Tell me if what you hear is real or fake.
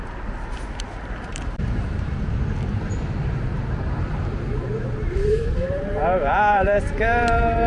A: fake